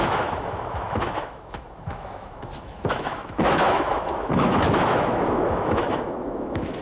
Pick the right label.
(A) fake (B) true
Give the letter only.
A